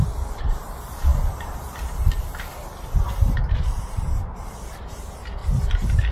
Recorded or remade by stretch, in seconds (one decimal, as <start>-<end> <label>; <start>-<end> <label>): 0.0-5.4 remade; 5.4-6.1 recorded